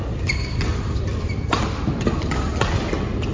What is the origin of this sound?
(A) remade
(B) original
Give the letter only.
B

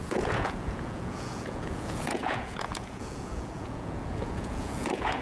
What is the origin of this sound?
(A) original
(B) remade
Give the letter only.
B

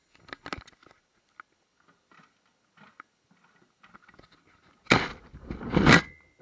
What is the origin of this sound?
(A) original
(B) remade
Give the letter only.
A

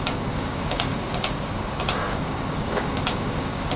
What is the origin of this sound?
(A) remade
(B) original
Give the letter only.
A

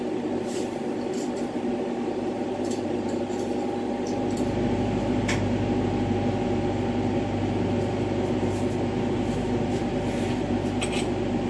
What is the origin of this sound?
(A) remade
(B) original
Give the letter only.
B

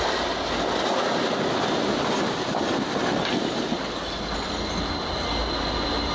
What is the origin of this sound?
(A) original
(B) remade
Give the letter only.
A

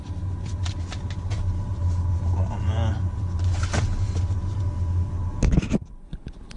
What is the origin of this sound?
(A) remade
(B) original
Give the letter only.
B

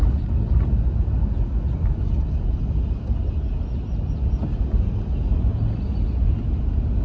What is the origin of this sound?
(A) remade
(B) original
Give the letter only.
B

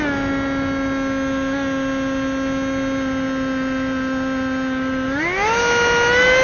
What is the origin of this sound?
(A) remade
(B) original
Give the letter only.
B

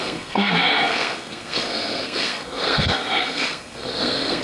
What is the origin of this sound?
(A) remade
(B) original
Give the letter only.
A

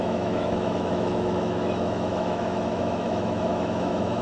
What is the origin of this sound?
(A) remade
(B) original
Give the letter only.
A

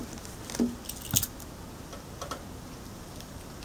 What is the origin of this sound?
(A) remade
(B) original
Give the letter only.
B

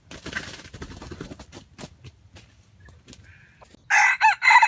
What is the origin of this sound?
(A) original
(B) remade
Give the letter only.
A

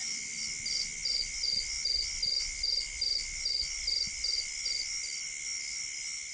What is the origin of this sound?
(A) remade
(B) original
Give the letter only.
B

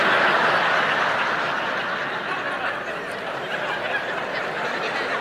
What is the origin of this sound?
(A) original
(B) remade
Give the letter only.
A